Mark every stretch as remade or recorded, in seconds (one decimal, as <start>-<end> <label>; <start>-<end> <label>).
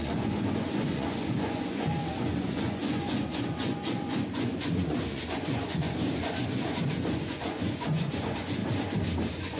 0.0-8.6 remade; 8.6-9.2 recorded; 9.2-9.6 remade